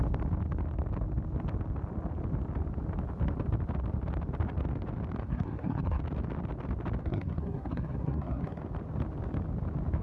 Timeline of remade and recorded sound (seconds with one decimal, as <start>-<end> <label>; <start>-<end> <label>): 0.0-5.2 recorded; 5.2-6.0 remade; 6.0-7.0 recorded; 7.0-8.6 remade; 8.6-10.0 recorded